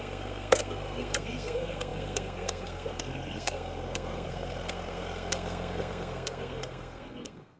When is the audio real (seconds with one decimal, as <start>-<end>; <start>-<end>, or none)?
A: none